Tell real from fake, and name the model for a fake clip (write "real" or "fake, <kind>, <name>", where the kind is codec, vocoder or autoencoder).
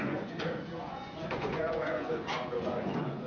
fake, vocoder, Vocos